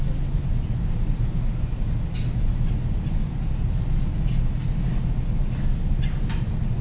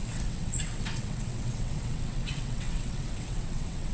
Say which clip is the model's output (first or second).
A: second